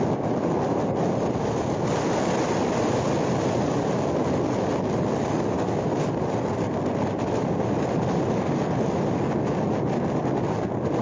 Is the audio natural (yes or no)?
yes